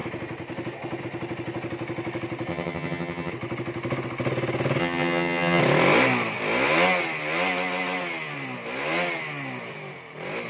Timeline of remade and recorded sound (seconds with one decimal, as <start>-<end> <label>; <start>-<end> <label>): 0.0-2.5 recorded; 2.5-3.3 remade; 3.3-4.8 recorded; 4.8-5.6 remade; 5.6-10.5 recorded